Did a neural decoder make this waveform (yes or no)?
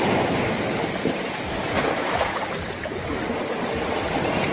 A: no